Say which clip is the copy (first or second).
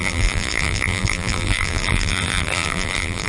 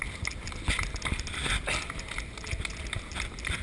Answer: first